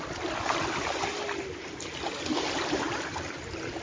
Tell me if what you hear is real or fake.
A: real